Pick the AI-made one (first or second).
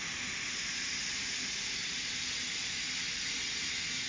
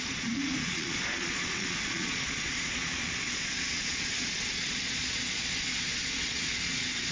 second